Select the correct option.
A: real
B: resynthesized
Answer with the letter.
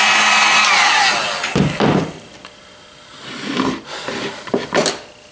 A